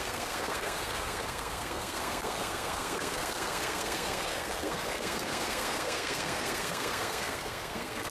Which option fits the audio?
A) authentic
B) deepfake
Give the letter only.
B